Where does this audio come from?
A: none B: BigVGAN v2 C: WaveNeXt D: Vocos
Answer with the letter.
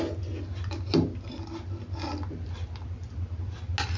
A